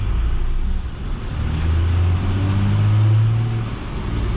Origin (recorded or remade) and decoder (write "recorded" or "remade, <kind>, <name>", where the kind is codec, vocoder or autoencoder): recorded